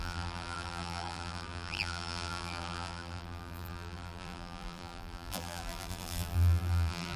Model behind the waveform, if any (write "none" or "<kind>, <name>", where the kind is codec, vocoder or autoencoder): vocoder, BigVGAN v2